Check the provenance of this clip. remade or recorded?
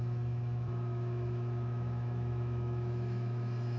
remade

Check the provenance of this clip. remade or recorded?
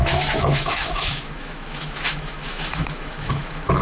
remade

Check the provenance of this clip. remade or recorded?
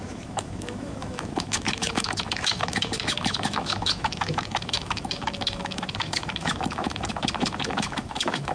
remade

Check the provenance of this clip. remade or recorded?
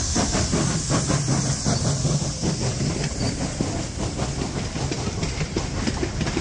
recorded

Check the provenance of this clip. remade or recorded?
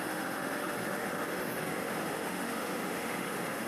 remade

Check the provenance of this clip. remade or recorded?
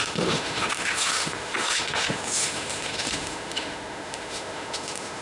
remade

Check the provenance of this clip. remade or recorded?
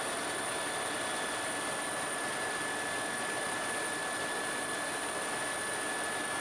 recorded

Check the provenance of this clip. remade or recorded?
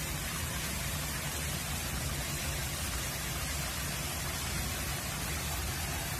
recorded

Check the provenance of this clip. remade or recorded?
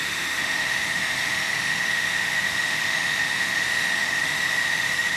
remade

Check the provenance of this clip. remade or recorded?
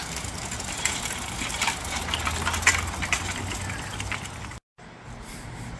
recorded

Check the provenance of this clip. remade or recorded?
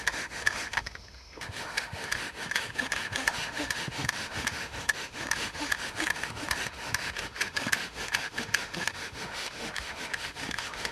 remade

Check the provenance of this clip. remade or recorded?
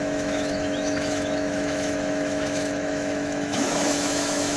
remade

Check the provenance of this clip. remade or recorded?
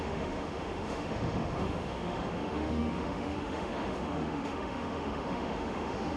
remade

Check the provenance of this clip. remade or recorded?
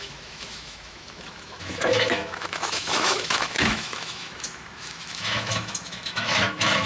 remade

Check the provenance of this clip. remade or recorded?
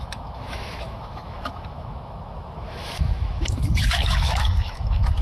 remade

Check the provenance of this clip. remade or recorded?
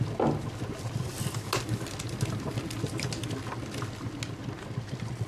recorded